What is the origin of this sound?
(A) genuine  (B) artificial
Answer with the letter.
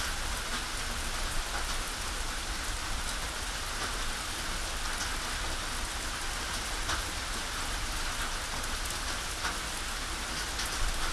A